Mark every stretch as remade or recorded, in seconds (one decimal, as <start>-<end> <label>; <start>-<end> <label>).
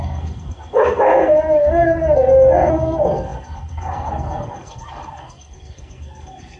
0.0-6.6 remade